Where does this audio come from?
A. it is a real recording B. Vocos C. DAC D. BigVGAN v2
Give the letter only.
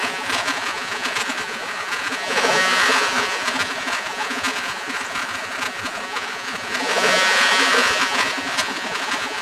B